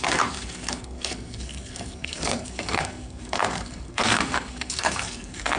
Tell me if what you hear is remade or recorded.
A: remade